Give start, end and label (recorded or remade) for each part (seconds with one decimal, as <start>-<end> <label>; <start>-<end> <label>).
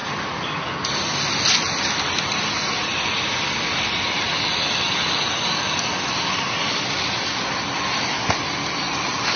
0.0-9.4 recorded